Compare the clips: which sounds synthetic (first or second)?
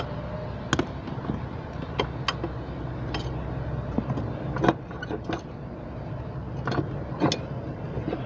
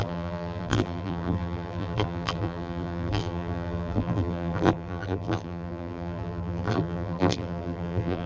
second